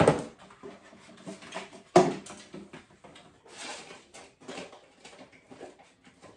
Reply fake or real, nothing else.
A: real